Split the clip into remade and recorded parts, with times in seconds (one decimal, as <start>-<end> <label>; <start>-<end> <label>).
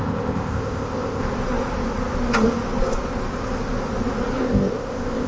0.0-1.2 remade; 1.2-4.4 recorded; 4.4-5.3 remade